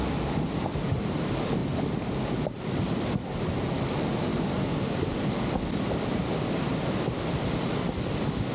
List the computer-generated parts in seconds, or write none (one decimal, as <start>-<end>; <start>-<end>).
none